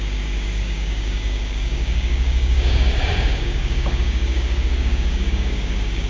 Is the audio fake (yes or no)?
yes